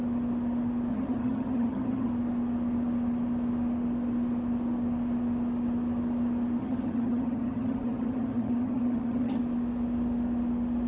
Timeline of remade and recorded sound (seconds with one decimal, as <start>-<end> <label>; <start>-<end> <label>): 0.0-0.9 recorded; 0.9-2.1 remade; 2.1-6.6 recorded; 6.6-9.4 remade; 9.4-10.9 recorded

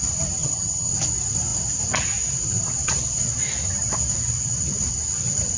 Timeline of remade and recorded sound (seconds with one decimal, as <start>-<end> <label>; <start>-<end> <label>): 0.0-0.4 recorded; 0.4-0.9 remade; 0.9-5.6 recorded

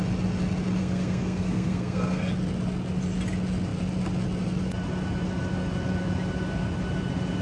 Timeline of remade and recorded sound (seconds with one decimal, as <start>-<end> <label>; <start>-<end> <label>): 0.0-0.8 recorded; 0.8-2.3 remade; 2.3-7.4 recorded

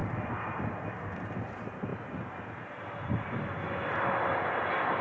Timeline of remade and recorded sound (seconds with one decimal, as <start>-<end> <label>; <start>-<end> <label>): 0.0-0.7 remade; 0.7-5.0 recorded